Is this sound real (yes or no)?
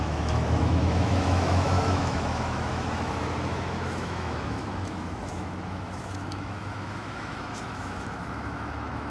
no